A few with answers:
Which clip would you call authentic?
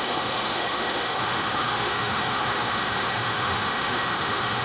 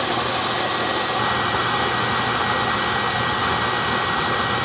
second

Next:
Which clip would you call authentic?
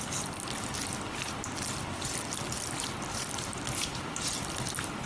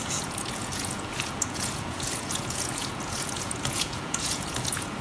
first